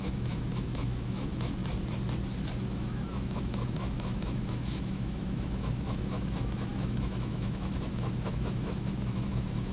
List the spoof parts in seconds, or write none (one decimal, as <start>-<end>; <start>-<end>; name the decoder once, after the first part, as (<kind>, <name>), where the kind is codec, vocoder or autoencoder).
0.0-1.6 (autoencoder, DAC-VAE); 2.7-9.7